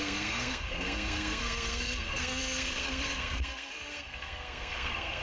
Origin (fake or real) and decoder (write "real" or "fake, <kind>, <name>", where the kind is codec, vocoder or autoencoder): fake, codec, SNAC